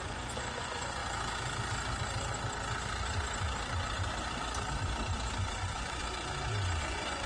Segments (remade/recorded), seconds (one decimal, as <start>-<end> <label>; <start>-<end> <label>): 0.0-1.0 remade; 1.0-5.4 recorded; 5.4-6.0 remade; 6.0-6.8 recorded; 6.8-7.3 remade